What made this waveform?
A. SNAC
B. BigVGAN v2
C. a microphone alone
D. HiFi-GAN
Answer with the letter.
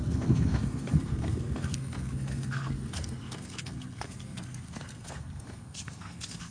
A